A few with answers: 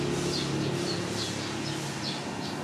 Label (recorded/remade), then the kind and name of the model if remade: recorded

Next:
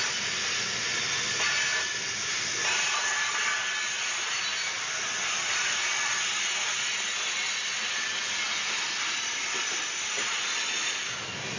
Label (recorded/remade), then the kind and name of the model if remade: recorded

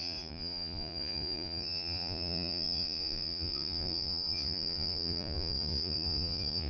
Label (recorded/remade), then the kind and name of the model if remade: remade, vocoder, Vocos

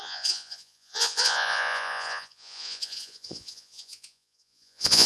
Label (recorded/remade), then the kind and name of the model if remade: remade, vocoder, Vocos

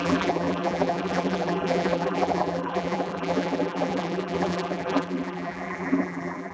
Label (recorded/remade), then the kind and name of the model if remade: remade, vocoder, BigVGAN v2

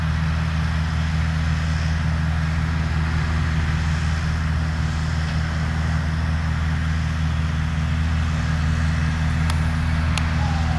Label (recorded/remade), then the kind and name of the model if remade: recorded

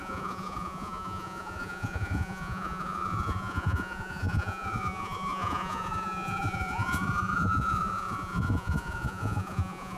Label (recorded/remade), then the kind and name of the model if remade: remade, vocoder, Vocos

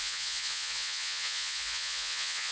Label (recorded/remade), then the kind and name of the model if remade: remade, vocoder, Vocos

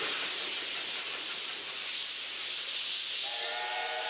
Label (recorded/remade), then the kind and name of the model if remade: recorded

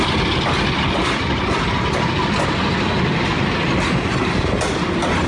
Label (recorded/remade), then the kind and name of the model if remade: recorded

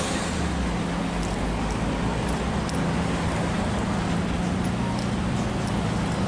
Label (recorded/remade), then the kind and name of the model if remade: recorded